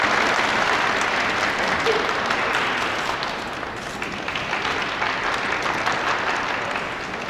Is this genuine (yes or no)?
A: yes